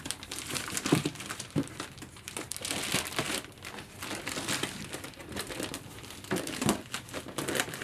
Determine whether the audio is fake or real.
real